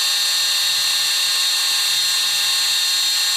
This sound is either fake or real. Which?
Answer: real